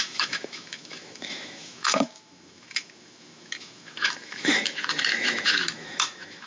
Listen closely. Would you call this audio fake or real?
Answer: fake